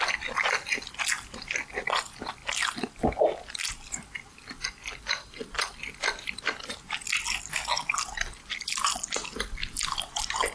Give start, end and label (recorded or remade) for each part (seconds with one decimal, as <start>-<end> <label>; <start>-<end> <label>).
0.0-10.5 recorded